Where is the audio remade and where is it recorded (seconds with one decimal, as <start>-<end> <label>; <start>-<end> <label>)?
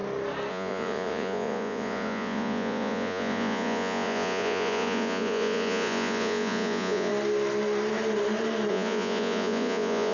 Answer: 0.0-0.5 recorded; 0.5-7.1 remade; 7.1-8.7 recorded; 8.7-10.1 remade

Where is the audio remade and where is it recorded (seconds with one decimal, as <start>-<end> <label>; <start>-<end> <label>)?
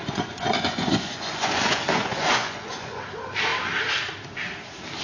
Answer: 0.0-3.0 remade; 3.0-5.0 recorded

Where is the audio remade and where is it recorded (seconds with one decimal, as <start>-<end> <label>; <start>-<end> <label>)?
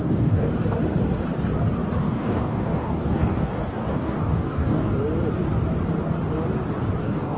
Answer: 0.0-0.5 remade; 0.5-2.0 recorded; 2.0-4.9 remade; 4.9-7.0 recorded; 7.0-7.4 remade